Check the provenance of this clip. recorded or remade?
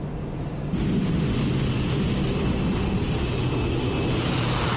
recorded